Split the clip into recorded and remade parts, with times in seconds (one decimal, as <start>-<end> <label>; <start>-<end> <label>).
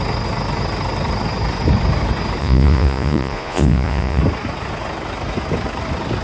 0.0-2.4 recorded; 2.4-4.2 remade; 4.2-6.2 recorded